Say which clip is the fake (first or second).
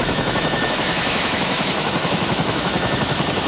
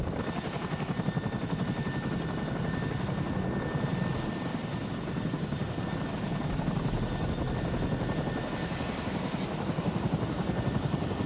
first